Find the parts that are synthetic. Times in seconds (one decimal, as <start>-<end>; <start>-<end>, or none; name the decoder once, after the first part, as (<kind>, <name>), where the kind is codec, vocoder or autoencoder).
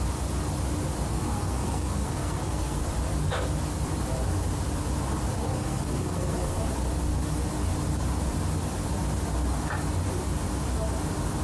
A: 1.1-2.8 (codec, SNAC); 5.4-6.6